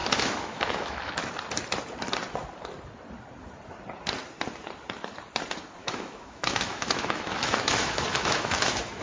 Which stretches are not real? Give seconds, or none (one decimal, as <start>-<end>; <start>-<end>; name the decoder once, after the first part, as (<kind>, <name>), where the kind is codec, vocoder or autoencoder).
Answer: 0.0-1.1 (autoencoder, DAC-VAE); 5.8-9.0